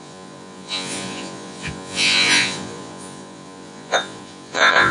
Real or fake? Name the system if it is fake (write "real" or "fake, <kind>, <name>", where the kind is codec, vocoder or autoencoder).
fake, vocoder, Vocos